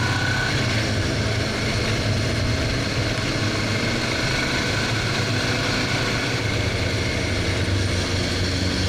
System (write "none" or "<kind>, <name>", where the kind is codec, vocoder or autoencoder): none